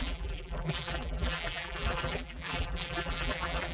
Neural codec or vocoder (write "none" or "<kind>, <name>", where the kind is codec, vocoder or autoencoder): vocoder, BigVGAN v2